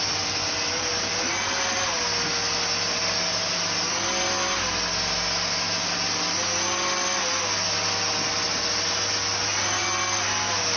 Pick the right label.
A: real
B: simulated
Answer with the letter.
A